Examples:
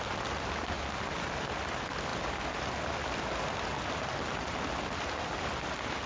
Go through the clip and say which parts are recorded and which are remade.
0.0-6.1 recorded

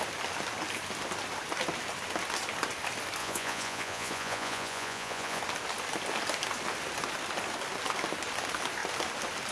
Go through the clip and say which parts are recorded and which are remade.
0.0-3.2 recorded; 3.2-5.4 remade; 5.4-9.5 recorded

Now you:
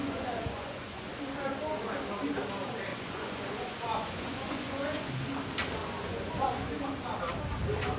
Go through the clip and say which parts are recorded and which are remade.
0.0-1.1 remade; 1.1-2.9 recorded; 2.9-5.1 remade; 5.1-5.8 recorded; 5.8-6.7 remade; 6.7-8.0 recorded

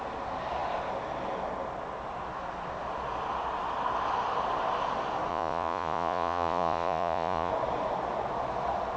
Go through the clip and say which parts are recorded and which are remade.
0.0-5.3 recorded; 5.3-7.5 remade; 7.5-9.0 recorded